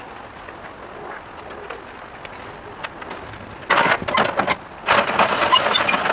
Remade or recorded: recorded